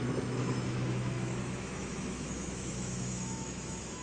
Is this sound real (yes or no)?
no